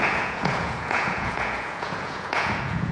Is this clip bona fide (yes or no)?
no